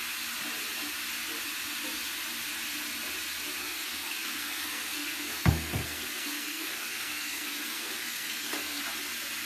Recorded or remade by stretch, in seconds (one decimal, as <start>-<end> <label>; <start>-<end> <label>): 0.0-3.6 recorded; 3.6-8.8 remade; 8.8-9.5 recorded